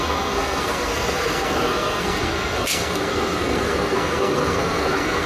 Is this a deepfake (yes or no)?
yes